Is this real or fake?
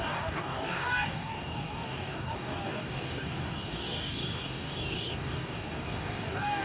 fake